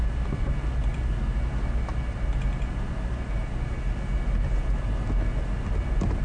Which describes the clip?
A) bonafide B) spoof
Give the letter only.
A